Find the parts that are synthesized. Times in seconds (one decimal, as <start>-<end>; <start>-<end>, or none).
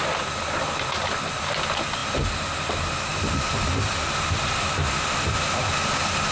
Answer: none